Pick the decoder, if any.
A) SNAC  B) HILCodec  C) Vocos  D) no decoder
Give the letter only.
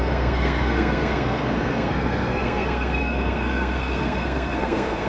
A